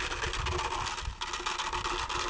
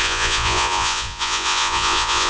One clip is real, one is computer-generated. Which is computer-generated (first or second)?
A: second